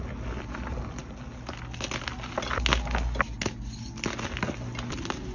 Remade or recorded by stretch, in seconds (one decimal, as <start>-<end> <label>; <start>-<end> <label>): 0.0-5.3 recorded